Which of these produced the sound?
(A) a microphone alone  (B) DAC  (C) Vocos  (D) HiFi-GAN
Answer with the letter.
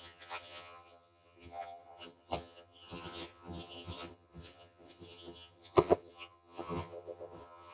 D